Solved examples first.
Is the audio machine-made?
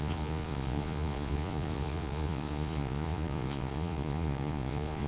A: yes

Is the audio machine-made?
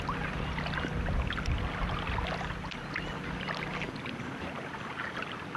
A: no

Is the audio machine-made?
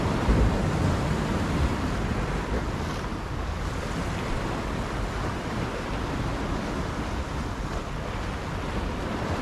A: no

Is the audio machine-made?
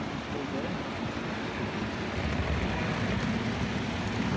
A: no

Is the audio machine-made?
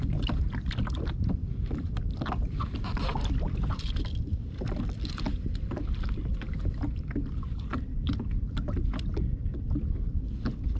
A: no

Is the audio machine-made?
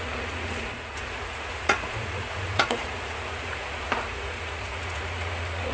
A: yes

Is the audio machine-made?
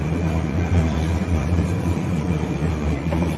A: yes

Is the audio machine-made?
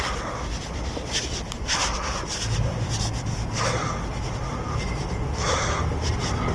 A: no